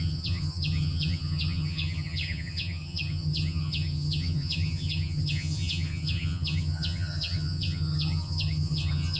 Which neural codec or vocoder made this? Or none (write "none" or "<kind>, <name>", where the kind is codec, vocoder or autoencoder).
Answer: vocoder, HiFi-GAN